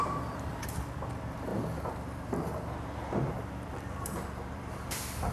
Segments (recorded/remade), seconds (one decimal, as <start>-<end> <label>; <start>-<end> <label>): 0.0-5.3 remade